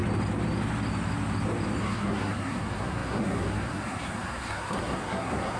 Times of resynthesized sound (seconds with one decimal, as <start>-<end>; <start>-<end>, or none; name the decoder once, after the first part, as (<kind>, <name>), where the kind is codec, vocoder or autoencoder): 1.8-5.6 (codec, SNAC)